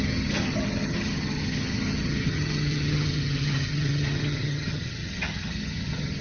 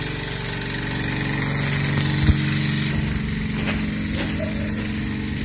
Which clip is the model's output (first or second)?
first